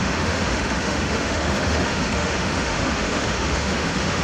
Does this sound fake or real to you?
fake